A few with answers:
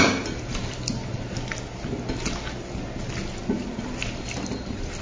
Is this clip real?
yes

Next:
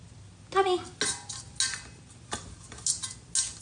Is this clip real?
yes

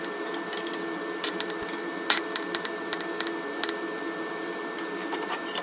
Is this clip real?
yes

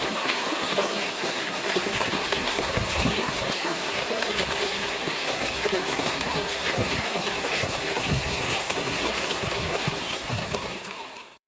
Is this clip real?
no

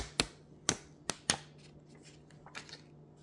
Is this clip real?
yes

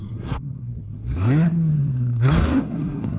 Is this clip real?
no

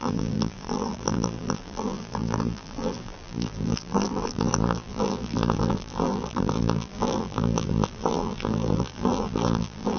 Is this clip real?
no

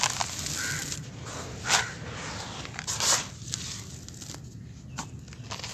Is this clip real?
yes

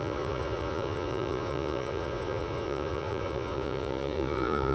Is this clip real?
no